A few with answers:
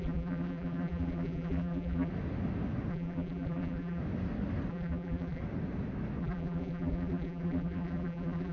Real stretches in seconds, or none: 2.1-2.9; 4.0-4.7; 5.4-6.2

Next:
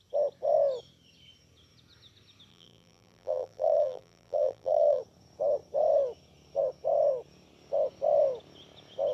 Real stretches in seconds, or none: 0.0-2.5; 5.0-9.1

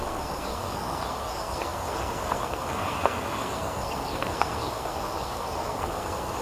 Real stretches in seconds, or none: none

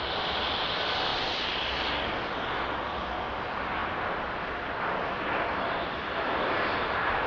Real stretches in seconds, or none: 0.0-1.1; 1.7-3.8; 6.5-7.3